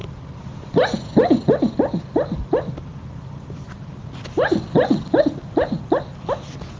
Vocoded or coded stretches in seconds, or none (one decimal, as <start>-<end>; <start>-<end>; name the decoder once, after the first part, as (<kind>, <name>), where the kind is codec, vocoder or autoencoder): none